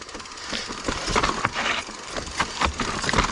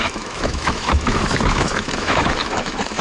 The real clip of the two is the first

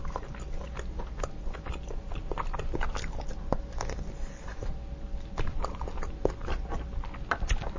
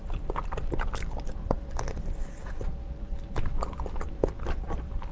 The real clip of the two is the first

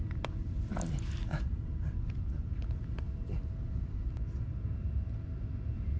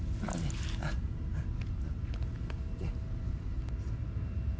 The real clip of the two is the second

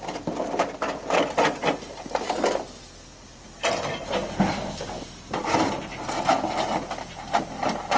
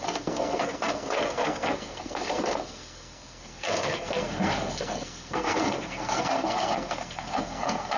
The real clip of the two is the first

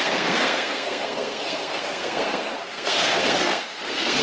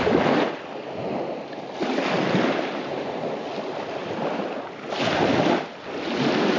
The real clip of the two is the second